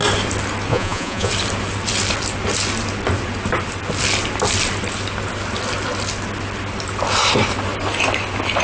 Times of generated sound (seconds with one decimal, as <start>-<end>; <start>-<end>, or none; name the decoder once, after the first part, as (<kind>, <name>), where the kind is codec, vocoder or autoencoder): 0.7-1.3 (vocoder, Vocos)